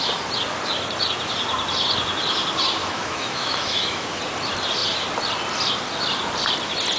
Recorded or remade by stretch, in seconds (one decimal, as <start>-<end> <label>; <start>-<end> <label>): 0.0-2.8 recorded; 2.8-4.2 remade; 4.2-7.0 recorded